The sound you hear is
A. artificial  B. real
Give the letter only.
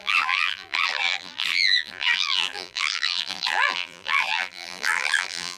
A